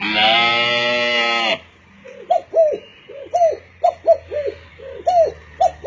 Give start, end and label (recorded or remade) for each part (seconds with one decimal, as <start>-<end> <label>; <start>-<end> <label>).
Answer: 0.0-5.9 recorded